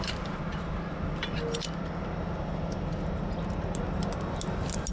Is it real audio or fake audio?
real